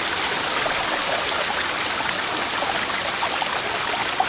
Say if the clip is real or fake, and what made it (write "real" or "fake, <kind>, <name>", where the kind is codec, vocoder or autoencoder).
real